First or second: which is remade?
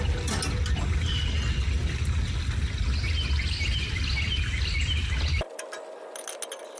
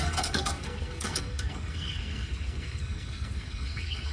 second